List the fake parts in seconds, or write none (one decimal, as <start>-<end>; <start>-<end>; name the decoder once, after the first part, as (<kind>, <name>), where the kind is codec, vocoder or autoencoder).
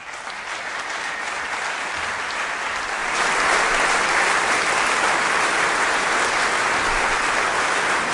none